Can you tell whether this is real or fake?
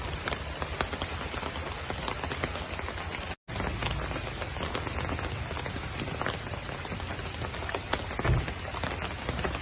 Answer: real